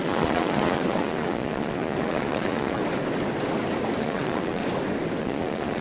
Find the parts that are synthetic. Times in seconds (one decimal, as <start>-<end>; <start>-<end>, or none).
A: 0.0-2.8; 4.0-4.6; 5.2-5.8